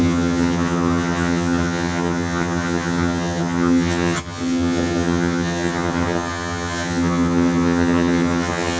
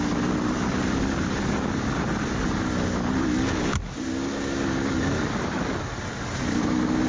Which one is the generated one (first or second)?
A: first